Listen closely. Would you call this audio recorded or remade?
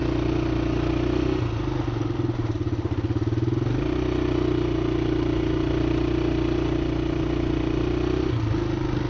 recorded